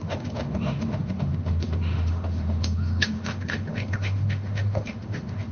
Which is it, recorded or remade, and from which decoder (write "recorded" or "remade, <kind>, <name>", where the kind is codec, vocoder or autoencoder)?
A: remade, autoencoder, DAC-VAE